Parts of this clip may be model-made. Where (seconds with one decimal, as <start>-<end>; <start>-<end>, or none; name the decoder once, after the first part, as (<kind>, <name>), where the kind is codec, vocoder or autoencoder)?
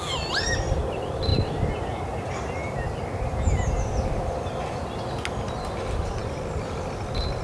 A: none